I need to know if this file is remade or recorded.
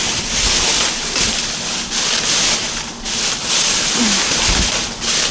recorded